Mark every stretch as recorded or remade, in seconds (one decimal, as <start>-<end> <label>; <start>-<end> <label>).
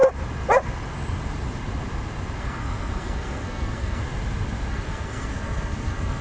0.0-2.4 recorded; 2.4-4.0 remade; 4.0-4.7 recorded; 4.7-6.2 remade